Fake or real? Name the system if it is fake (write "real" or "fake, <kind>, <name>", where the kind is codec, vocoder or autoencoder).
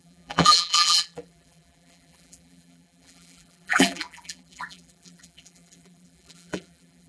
fake, vocoder, BigVGAN v2